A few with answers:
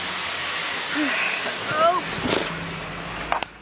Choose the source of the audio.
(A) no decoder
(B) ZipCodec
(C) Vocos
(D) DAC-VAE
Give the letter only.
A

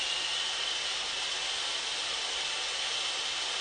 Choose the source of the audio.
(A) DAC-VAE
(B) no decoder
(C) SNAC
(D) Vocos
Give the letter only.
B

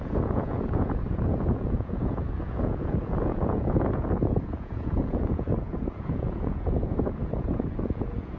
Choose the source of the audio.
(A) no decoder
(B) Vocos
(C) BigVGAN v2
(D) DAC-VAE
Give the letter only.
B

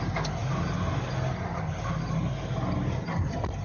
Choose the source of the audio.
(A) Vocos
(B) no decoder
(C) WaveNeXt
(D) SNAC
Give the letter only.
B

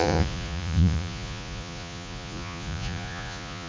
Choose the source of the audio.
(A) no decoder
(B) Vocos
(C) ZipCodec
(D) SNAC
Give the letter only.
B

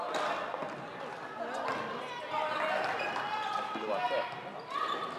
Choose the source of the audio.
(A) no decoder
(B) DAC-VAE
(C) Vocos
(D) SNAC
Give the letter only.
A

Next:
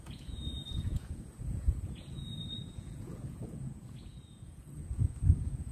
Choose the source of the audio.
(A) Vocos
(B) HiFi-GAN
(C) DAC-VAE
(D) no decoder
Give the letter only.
A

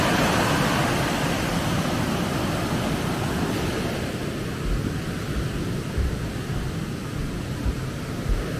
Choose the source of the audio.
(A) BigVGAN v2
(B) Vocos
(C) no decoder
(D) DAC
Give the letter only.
C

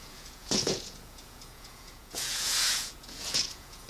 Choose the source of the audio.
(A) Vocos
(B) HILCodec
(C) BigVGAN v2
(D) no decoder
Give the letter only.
A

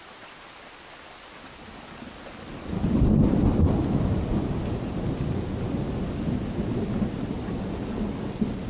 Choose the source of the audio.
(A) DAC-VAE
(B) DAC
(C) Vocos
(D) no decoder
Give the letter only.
D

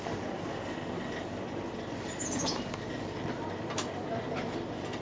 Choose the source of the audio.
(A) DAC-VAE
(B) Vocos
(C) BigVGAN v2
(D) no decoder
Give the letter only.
D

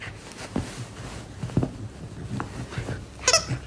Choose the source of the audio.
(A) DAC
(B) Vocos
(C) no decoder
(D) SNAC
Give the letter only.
C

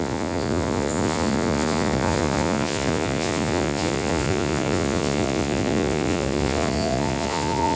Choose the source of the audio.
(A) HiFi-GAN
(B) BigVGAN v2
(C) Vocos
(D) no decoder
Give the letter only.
C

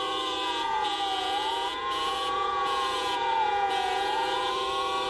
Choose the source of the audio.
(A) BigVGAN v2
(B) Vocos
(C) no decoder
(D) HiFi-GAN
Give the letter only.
B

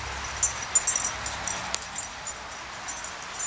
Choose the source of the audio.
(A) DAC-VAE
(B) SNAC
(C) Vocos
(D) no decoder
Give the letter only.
D